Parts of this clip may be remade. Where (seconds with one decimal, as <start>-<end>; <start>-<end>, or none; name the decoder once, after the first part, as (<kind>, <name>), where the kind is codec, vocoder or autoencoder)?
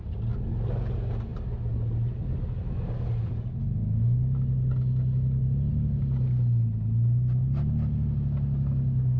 none